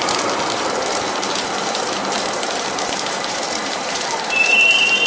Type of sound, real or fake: fake